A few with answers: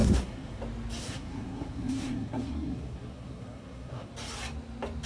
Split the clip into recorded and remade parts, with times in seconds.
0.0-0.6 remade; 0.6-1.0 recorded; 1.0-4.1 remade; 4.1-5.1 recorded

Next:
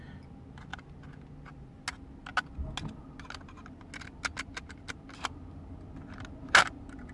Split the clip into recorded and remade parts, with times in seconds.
0.0-7.1 recorded

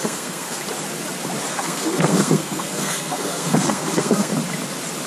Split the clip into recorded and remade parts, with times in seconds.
0.0-0.6 remade; 0.6-1.5 recorded; 1.5-4.3 remade; 4.3-5.1 recorded

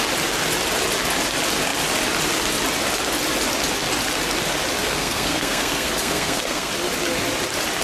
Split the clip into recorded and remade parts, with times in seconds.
0.0-4.8 recorded; 4.8-6.7 remade; 6.7-7.8 recorded

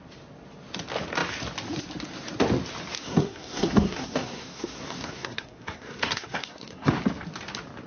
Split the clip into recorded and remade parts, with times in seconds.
0.0-3.0 recorded; 3.0-6.9 remade; 6.9-7.9 recorded

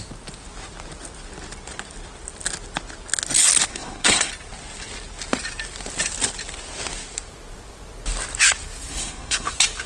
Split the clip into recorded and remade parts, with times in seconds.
0.0-3.7 recorded; 3.7-4.3 remade; 4.3-8.9 recorded; 8.9-9.5 remade; 9.5-9.9 recorded